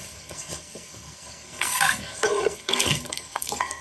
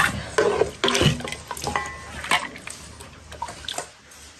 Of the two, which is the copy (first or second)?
first